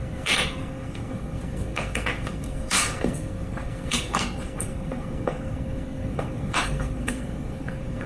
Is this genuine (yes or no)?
no